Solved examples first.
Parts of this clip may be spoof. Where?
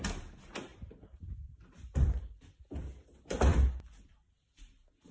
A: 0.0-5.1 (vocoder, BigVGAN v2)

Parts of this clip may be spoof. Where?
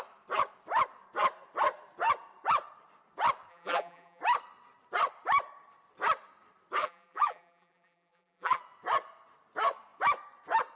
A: 3.5-4.2 (vocoder, BigVGAN v2); 6.8-8.6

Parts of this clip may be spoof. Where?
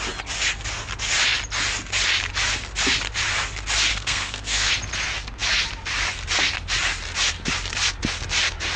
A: 3.9-4.7 (codec, SNAC)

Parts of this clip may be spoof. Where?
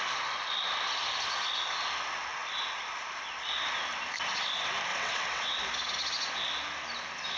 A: 4.9-5.6 (vocoder, WaveNeXt)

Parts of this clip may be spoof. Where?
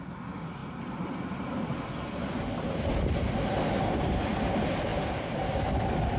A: 4.9-5.8 (vocoder, BigVGAN v2)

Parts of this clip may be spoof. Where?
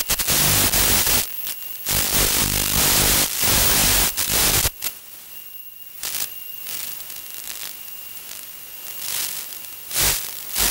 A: 0.0-10.7 (vocoder, BigVGAN v2)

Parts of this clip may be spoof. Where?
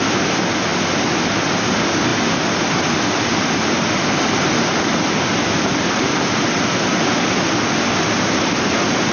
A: none